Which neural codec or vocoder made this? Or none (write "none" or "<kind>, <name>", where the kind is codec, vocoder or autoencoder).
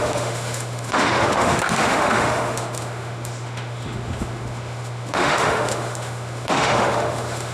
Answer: autoencoder, DAC-VAE